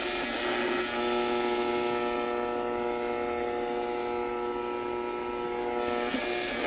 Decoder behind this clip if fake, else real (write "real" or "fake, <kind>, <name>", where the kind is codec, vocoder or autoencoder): real